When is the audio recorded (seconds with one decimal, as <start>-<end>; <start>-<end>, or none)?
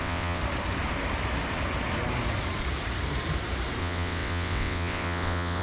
0.4-3.8